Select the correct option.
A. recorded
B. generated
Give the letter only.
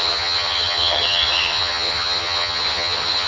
B